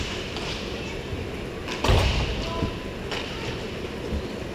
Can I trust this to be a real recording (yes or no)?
yes